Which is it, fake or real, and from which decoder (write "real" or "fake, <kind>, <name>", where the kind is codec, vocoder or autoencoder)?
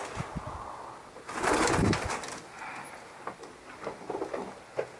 real